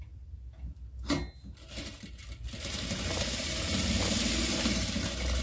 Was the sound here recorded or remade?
recorded